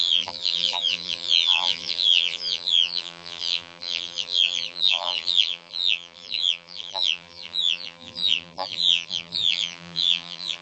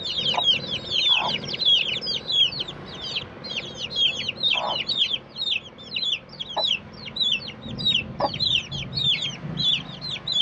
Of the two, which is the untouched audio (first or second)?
second